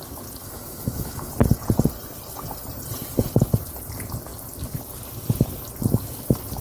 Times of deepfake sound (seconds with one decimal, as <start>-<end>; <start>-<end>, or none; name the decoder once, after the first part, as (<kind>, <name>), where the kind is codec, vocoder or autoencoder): 0.4-1.3 (autoencoder, DAC-VAE)